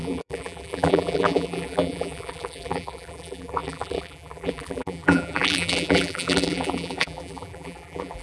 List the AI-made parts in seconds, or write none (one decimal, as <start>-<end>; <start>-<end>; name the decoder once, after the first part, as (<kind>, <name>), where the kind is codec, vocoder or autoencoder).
0.0-8.2 (vocoder, BigVGAN v2)